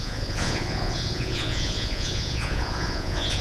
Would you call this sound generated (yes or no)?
yes